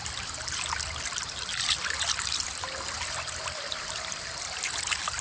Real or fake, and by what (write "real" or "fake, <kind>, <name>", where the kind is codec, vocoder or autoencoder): real